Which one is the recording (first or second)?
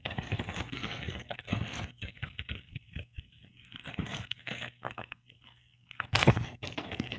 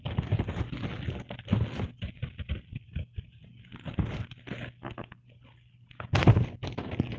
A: second